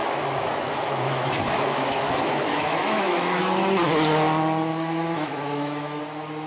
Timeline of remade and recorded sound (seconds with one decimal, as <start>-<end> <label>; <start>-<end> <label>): 0.0-3.4 remade; 3.4-4.7 recorded; 4.7-6.0 remade; 6.0-6.5 recorded